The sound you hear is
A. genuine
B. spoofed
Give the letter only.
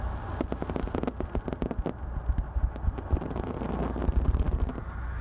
A